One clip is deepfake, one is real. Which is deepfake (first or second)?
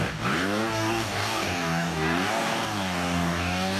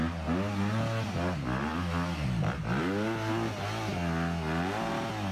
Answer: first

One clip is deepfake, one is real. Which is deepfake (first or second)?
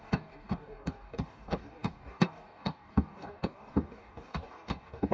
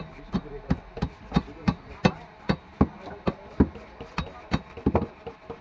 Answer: first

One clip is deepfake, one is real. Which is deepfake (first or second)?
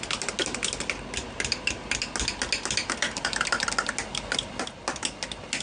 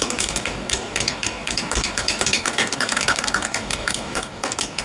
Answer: second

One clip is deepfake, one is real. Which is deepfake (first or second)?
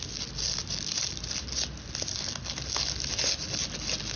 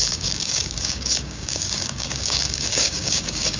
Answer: second